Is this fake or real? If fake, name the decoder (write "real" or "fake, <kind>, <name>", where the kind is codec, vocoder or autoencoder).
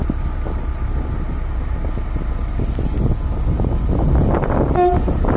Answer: real